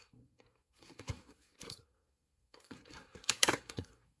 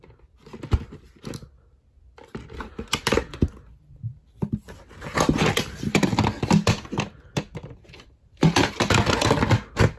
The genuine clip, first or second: second